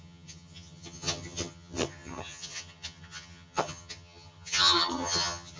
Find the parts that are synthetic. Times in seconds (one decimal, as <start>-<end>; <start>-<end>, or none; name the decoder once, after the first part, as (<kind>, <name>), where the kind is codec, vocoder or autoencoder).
0.0-5.6 (vocoder, HiFi-GAN)